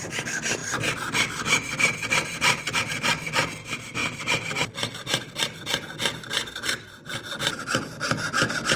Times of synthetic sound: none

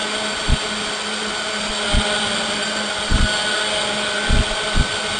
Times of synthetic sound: none

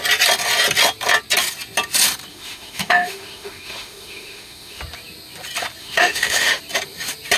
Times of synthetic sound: 2.3-4.8; 5.8-6.6

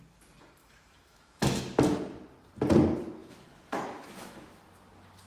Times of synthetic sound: 0.6-1.6; 3.2-4.6

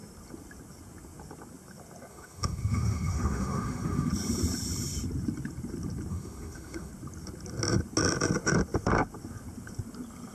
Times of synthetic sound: 2.1-4.1; 6.1-6.9

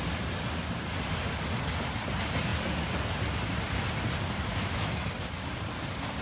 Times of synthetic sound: 4.5-5.1